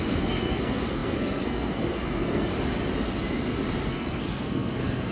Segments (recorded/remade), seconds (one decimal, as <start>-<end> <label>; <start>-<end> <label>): 0.0-2.5 remade; 2.5-3.9 recorded; 3.9-5.1 remade